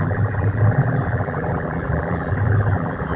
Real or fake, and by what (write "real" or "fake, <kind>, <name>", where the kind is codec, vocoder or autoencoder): fake, vocoder, BigVGAN v2